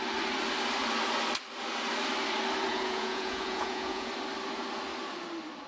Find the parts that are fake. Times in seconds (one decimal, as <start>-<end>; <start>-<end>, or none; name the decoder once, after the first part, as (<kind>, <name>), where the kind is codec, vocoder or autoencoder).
2.7-4.1 (vocoder, Vocos)